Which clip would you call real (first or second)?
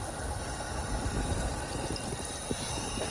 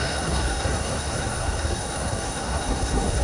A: first